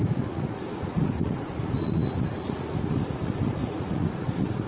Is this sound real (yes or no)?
no